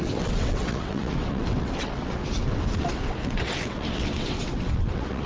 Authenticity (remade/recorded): remade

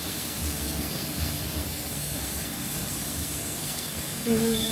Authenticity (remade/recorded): remade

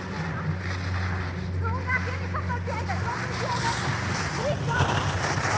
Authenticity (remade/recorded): recorded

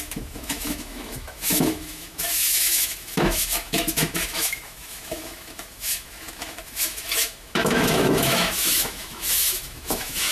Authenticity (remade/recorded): remade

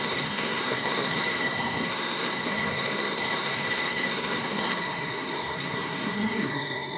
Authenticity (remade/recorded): remade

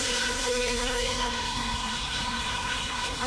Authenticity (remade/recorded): remade